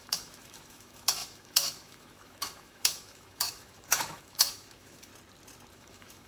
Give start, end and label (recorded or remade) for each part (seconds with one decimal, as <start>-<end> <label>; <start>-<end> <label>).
0.0-5.1 remade; 5.1-5.7 recorded; 5.7-6.3 remade